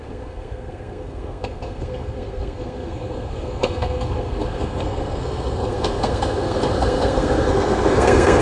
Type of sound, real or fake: fake